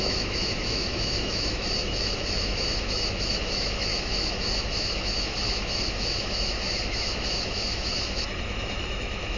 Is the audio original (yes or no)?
no